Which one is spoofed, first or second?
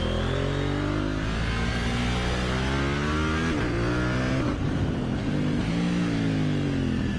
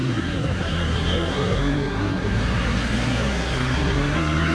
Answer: second